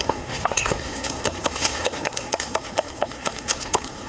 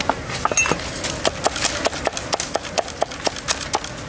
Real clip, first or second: second